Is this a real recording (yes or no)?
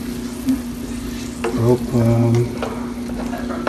yes